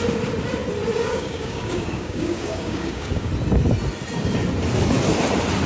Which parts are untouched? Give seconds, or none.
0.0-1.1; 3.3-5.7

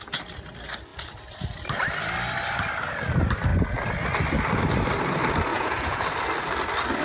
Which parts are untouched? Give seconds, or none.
0.0-5.5; 6.0-7.0

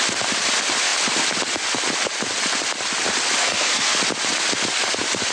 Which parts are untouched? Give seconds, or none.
0.0-3.4; 4.0-5.3

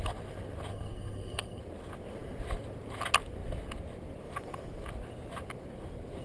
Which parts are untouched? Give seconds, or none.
0.0-0.7; 1.6-6.2

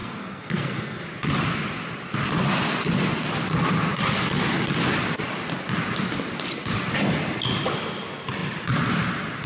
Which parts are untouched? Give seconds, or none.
1.0-9.5

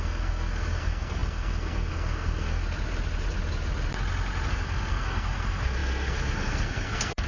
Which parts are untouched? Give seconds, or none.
2.6-4.5

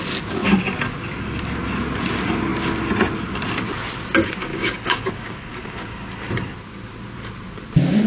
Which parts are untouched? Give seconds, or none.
0.0-4.5; 6.1-8.1